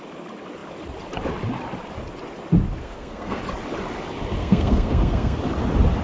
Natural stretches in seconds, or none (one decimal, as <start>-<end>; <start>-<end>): 0.0-2.8; 3.4-4.4; 5.4-6.0